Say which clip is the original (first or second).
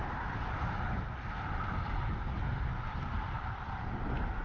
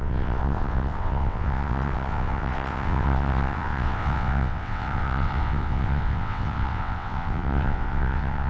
first